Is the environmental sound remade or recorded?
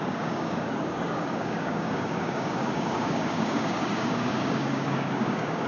remade